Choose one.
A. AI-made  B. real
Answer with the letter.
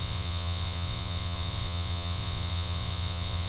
A